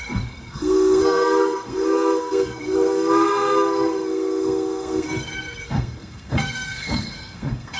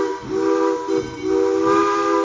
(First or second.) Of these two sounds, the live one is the second